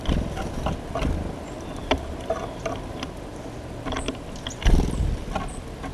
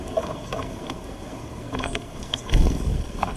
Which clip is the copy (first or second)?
second